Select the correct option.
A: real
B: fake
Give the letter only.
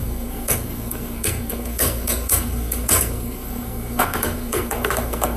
B